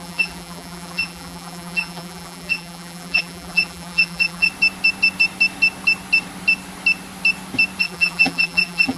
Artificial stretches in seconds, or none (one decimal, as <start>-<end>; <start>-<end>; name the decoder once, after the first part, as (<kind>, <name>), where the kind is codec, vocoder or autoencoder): 0.0-4.5 (vocoder, BigVGAN v2); 7.8-9.0